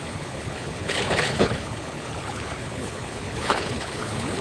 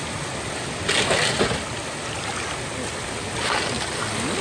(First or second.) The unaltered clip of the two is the second